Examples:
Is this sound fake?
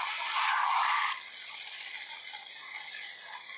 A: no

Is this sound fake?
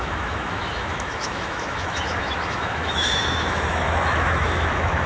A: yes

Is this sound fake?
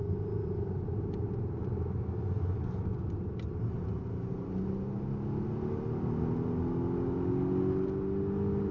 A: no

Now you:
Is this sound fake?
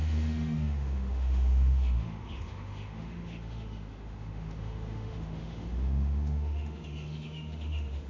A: yes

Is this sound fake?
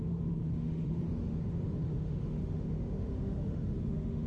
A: yes